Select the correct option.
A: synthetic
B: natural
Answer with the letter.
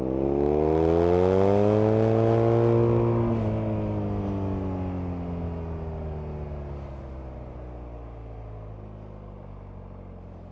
B